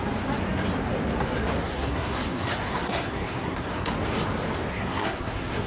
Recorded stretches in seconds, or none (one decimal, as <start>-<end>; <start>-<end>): 0.0-1.6; 3.9-4.7